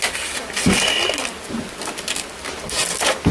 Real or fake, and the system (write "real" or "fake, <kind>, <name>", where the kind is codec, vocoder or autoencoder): real